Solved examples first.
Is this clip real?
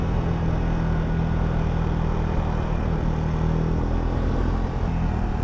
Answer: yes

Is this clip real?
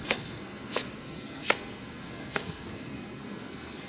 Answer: no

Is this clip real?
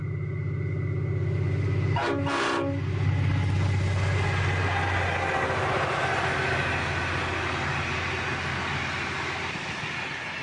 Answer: yes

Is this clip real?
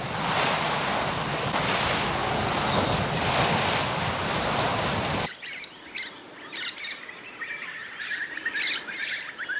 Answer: yes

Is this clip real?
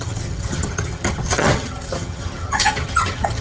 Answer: no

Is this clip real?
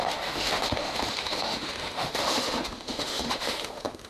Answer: no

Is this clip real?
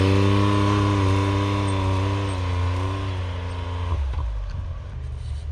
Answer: yes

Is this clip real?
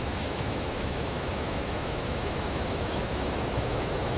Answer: no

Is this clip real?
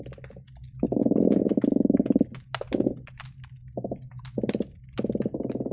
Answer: yes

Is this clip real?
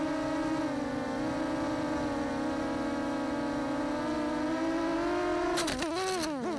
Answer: yes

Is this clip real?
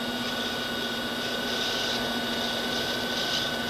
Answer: yes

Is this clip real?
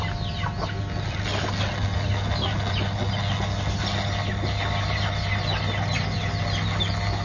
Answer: yes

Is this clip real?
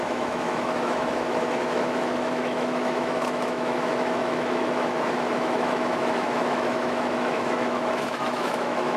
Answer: no